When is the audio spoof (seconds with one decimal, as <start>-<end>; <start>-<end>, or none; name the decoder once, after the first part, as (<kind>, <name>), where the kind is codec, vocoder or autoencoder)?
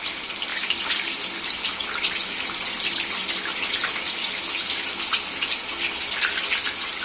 none